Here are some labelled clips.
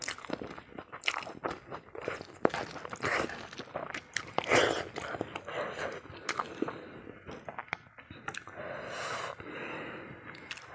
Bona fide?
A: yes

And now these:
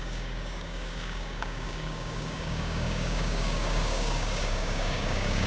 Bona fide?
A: no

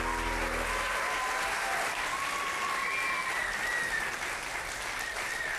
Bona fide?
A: yes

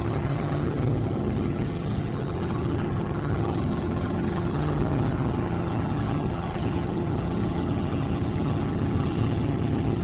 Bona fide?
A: no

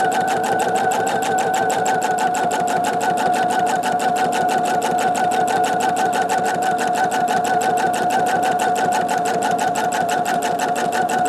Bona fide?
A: yes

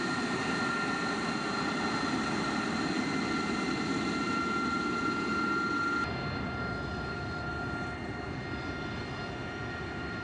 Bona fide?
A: yes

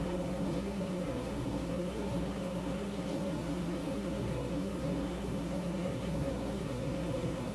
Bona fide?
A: no